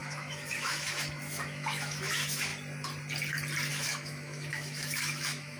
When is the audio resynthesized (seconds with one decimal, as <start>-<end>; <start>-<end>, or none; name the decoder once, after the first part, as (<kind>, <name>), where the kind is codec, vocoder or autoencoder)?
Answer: 0.0-2.5 (autoencoder, DAC-VAE); 3.7-5.6